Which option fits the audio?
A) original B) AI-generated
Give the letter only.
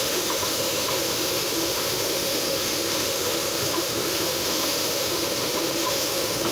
B